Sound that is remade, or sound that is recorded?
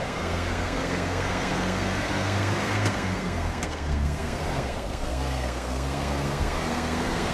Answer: remade